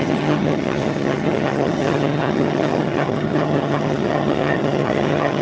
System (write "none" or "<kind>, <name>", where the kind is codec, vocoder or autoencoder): vocoder, HiFi-GAN